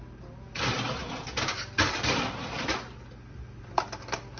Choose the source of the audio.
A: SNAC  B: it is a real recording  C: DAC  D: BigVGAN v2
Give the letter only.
B